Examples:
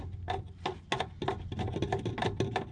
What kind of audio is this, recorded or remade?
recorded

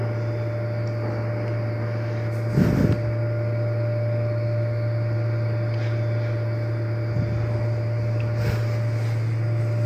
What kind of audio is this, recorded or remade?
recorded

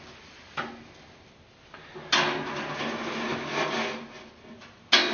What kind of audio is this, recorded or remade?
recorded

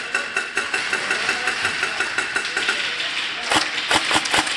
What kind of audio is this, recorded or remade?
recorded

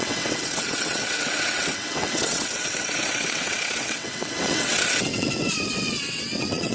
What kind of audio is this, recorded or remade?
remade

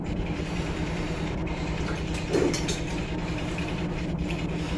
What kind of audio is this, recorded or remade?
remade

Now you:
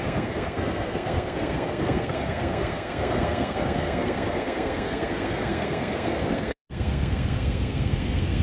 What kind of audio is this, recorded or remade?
remade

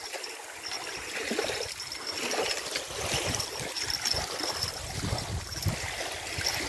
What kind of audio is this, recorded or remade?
recorded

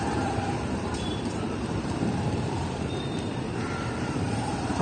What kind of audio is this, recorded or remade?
remade